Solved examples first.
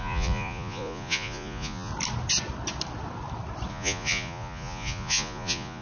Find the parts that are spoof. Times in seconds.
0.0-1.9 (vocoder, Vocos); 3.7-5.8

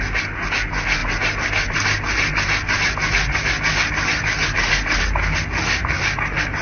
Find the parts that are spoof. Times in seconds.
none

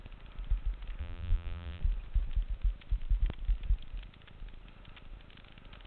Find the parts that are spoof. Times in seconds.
1.0-1.8 (vocoder, BigVGAN v2)